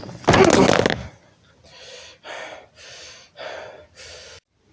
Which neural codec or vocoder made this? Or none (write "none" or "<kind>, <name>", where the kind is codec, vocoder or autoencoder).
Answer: none